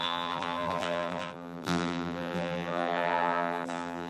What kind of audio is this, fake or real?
fake